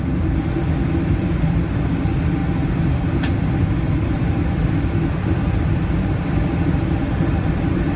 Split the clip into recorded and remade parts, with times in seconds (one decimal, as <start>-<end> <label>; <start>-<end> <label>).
0.0-8.0 recorded